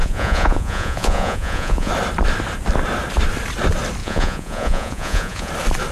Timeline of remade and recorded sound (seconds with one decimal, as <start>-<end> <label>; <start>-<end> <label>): 0.0-1.9 remade; 1.9-4.0 recorded; 4.0-5.5 remade; 5.5-5.9 recorded